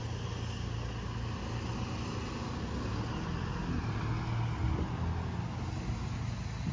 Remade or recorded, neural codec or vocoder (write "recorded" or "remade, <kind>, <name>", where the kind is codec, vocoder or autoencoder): recorded